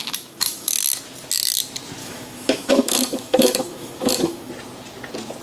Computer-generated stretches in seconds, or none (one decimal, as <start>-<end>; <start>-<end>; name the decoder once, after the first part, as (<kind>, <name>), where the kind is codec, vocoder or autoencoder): 0.0-0.8 (autoencoder, DAC-VAE); 2.0-4.5